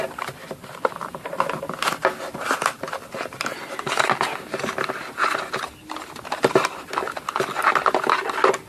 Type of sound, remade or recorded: recorded